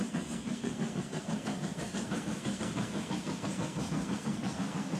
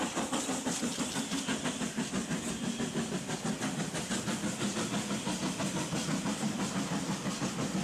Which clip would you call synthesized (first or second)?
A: first